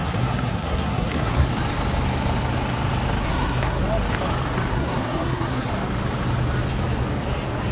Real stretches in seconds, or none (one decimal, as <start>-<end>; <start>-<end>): 1.5-3.2; 3.8-4.7; 5.7-7.7